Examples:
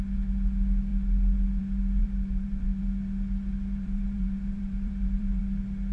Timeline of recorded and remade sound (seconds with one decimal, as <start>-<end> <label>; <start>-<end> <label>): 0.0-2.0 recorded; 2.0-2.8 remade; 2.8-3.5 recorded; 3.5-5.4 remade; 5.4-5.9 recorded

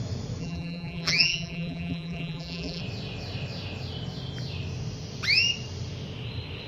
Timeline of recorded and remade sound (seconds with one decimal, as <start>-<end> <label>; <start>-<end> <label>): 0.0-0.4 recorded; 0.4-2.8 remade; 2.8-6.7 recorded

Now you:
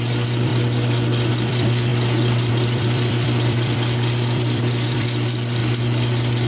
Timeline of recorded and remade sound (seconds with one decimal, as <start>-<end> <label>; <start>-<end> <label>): 0.0-0.5 remade; 0.5-1.3 recorded; 1.3-1.9 remade; 1.9-2.5 recorded; 2.5-5.6 remade; 5.6-6.5 recorded

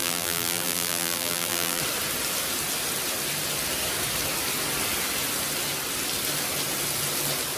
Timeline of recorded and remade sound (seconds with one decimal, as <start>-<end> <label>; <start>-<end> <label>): 0.0-1.8 remade; 1.8-7.6 recorded